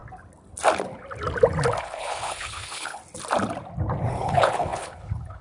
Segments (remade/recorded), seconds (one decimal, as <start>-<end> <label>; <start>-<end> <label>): 0.0-1.8 recorded; 1.8-3.0 remade; 3.0-4.1 recorded; 4.1-5.4 remade